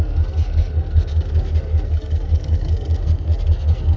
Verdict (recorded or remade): remade